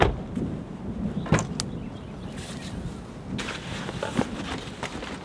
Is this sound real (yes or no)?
yes